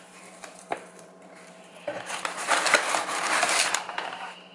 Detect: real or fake fake